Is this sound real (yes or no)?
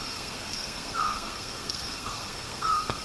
no